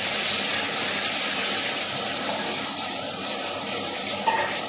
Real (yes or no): no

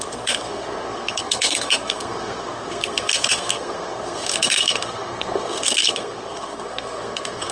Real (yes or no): no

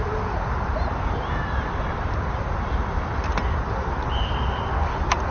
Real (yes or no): no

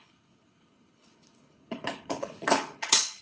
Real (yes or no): no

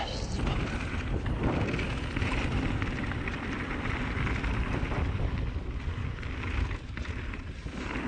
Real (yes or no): yes